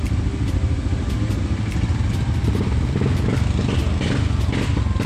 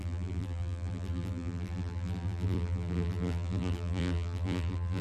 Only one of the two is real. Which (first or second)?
first